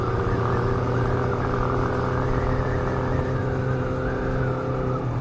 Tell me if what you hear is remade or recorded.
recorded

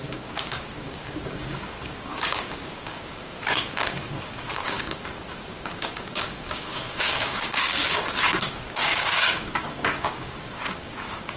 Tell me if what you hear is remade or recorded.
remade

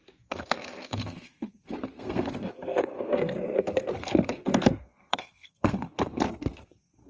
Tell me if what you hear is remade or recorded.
remade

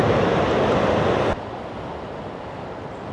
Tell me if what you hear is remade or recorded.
recorded